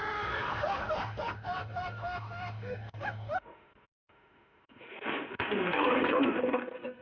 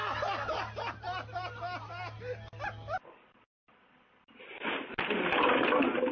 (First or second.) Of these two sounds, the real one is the second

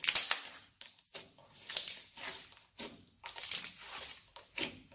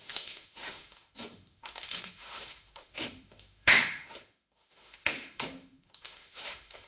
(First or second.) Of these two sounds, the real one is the first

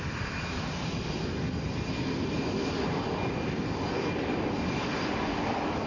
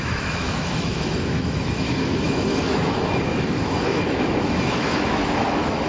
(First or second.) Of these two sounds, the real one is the first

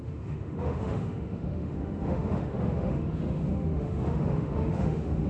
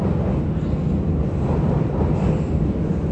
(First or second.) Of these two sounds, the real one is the second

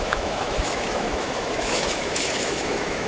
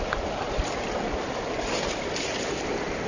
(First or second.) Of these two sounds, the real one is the second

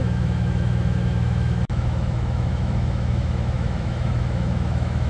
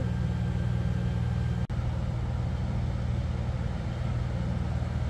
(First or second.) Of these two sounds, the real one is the second